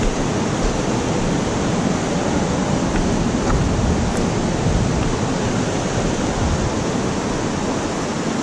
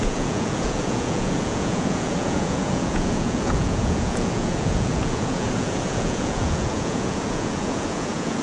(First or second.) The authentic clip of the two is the first